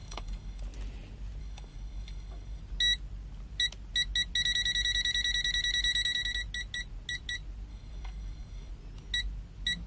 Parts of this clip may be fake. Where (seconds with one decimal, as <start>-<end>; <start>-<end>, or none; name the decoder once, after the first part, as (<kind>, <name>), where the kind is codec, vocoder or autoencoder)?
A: 0.0-0.6 (codec, DAC); 1.4-2.6; 7.7-8.7